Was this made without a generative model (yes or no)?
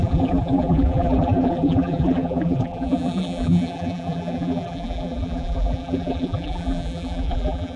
no